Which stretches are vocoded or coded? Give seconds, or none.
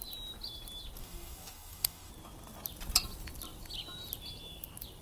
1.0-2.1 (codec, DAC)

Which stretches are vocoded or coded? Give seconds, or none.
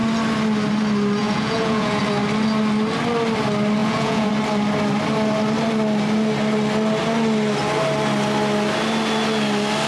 1.2-2.0 (vocoder, Vocos); 3.8-4.3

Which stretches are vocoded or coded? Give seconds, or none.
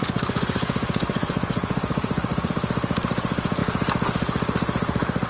0.0-2.5 (vocoder, Vocos)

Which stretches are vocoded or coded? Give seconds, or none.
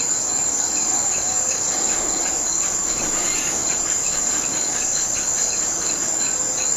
0.0-6.8 (codec, DAC)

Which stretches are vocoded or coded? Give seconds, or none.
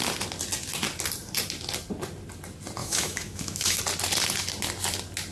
2.8-3.8 (autoencoder, DAC-VAE)